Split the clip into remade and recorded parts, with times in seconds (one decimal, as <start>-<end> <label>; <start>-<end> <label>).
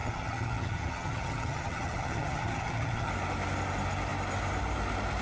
0.0-3.1 remade; 3.1-5.2 recorded